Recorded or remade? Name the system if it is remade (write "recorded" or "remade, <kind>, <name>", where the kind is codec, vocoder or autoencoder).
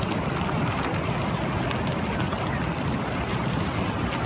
recorded